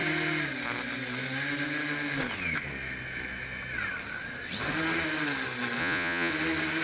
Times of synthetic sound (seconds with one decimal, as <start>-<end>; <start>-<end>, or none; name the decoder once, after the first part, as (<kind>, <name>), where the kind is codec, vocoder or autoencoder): 5.8-6.3 (vocoder, Vocos)